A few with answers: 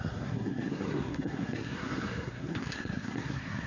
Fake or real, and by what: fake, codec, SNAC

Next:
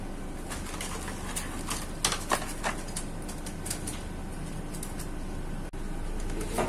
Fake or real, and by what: real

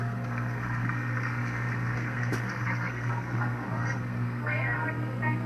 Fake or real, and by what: fake, codec, SNAC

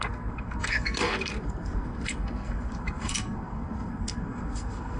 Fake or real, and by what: fake, codec, SNAC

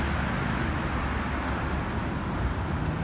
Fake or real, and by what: real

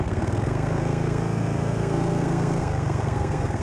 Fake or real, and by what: fake, codec, SNAC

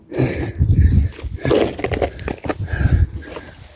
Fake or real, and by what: real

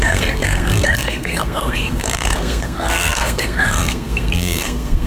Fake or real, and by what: fake, codec, SNAC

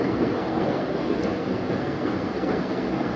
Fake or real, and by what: fake, codec, SNAC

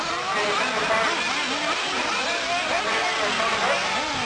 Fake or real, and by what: real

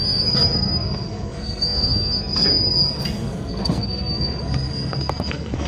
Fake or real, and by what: fake, codec, SNAC